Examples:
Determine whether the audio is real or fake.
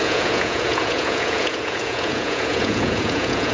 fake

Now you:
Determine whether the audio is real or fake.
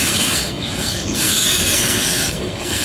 fake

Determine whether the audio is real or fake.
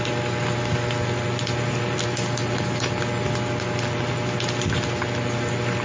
real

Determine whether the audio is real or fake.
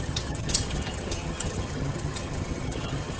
fake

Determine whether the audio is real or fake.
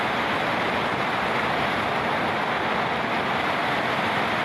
real